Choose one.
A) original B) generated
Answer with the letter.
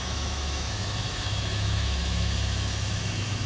B